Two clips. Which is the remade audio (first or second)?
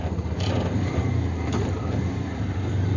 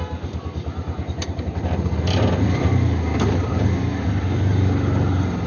first